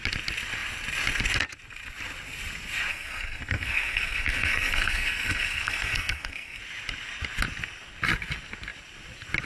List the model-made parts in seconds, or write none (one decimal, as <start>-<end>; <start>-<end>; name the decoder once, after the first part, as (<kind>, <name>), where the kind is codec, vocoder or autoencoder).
2.9-6.6 (codec, SNAC)